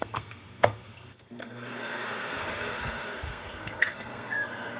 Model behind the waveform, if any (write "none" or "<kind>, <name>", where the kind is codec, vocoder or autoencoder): codec, SNAC